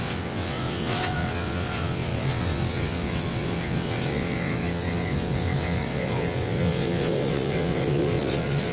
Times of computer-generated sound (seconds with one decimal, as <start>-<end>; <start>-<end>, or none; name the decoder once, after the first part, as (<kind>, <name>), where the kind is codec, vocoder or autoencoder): 0.0-8.7 (vocoder, WaveNeXt)